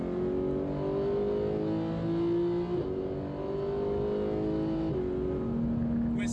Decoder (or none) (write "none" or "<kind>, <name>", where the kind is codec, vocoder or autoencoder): none